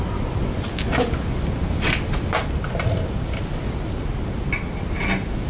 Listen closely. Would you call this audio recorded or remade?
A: recorded